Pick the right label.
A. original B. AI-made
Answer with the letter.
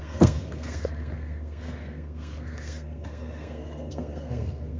B